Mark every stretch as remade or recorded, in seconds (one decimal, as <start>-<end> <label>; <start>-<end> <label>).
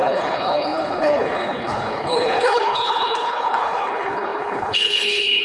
0.0-5.4 remade